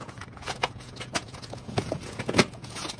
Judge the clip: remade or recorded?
remade